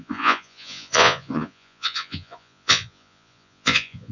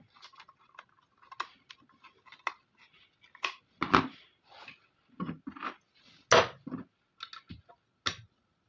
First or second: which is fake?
first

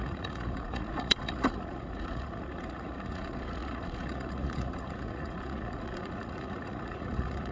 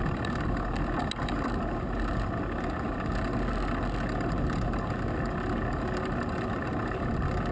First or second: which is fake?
first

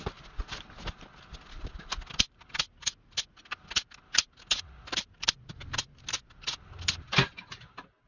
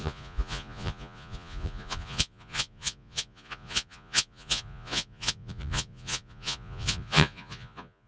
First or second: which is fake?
second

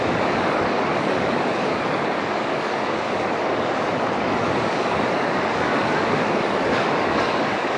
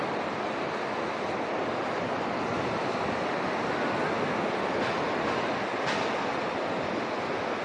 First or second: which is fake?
first